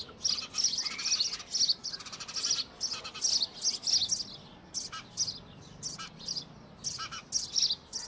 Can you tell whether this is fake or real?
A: real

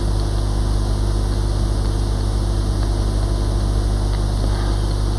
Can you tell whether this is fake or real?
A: real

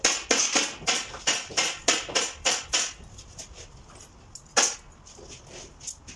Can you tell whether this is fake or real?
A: real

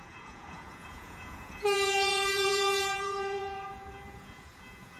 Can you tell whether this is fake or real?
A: fake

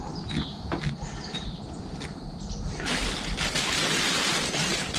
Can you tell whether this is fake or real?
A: real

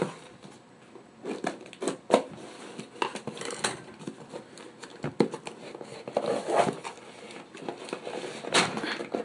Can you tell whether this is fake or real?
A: real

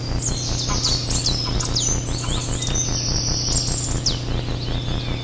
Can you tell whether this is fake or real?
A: real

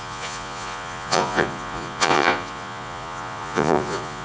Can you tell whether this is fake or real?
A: fake